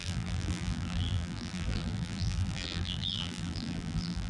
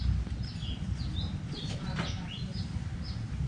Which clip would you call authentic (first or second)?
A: second